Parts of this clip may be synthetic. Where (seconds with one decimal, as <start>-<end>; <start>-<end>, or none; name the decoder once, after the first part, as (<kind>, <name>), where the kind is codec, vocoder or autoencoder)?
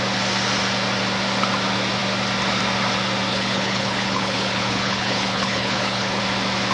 3.3-6.2 (codec, HILCodec)